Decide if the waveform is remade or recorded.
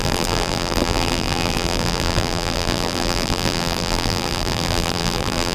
remade